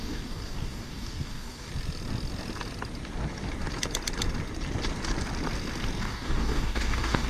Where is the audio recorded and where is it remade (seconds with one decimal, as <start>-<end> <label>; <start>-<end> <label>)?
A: 0.0-1.7 remade; 1.7-6.0 recorded; 6.0-7.3 remade